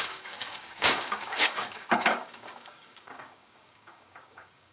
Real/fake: fake